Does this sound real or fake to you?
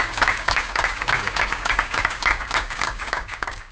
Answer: fake